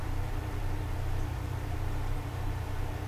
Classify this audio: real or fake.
fake